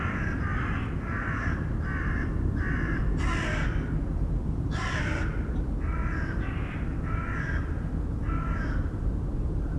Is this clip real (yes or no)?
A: no